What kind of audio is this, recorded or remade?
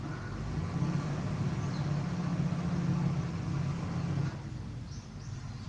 recorded